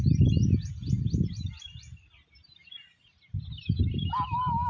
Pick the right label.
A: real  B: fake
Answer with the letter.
A